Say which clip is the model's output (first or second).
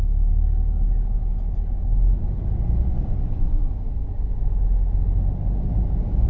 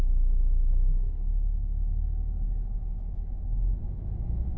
second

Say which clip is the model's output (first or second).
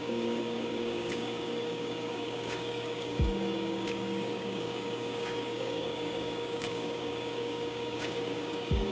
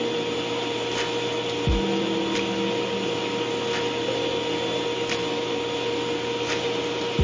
first